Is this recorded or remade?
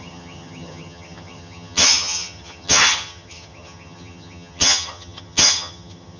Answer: remade